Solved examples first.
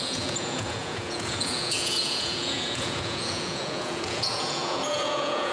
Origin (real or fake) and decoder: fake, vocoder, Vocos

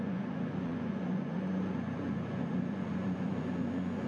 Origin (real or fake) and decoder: fake, vocoder, Vocos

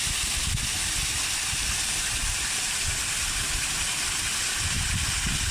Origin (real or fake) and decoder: real